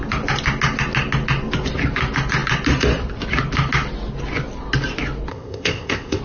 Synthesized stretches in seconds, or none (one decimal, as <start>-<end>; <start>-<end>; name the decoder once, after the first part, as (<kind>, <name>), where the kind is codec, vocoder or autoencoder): 5.3-6.2 (codec, ZipCodec)